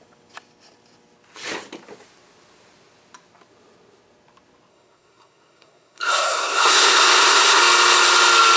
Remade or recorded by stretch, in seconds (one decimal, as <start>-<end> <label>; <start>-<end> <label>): 0.0-4.7 recorded; 4.7-7.6 remade; 7.6-8.6 recorded